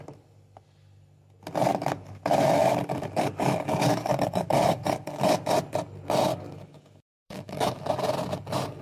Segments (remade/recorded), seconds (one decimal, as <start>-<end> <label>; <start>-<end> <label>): 0.0-1.7 recorded; 1.7-2.2 remade; 2.2-2.6 recorded; 2.6-5.2 remade; 5.2-6.3 recorded; 6.3-7.8 remade; 7.8-8.8 recorded